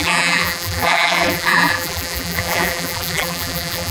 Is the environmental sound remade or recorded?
remade